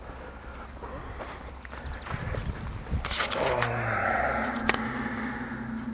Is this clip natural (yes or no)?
yes